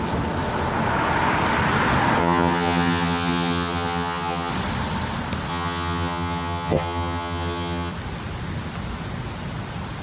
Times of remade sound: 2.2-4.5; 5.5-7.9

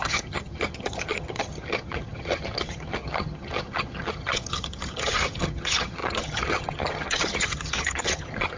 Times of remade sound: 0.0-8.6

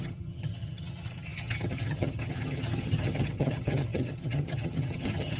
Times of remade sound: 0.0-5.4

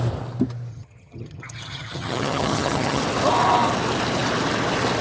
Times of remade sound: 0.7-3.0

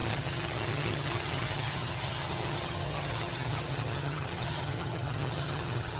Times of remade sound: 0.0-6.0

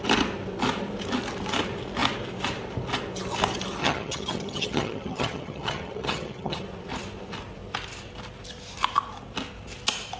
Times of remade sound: 3.8-6.6

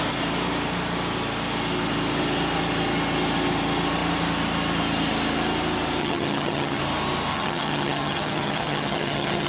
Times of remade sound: 6.0-6.8; 7.3-9.5